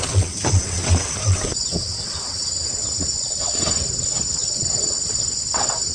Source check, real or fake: fake